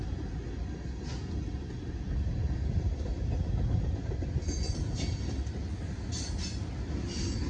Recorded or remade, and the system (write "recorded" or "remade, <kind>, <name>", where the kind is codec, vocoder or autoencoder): recorded